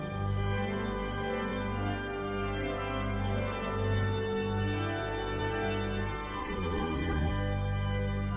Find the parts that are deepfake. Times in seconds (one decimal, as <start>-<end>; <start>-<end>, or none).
6.4-7.3